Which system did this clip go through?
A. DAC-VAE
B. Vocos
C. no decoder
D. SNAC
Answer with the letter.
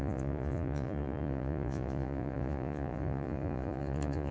B